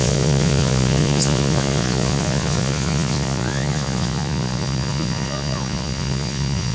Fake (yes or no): yes